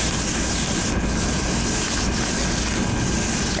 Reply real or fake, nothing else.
real